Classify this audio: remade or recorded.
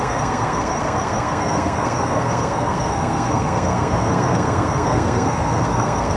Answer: remade